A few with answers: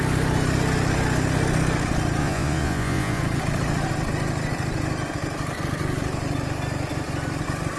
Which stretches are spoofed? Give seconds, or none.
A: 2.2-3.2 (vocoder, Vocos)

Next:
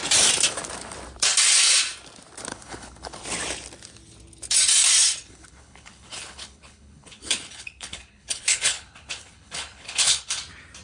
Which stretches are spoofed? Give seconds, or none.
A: 2.5-3.2 (codec, HILCodec); 5.2-10.4